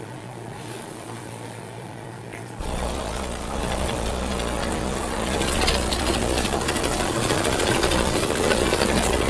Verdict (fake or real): fake